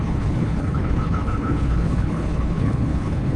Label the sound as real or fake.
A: fake